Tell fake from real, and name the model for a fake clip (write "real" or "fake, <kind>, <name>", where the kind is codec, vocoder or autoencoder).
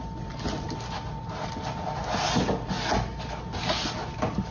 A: real